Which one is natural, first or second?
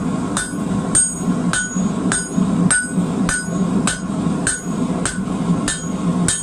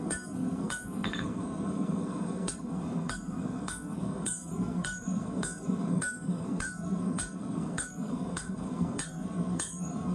first